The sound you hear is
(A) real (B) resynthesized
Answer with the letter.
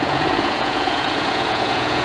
B